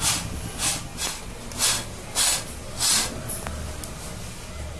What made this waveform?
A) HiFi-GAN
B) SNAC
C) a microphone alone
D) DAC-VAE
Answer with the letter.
C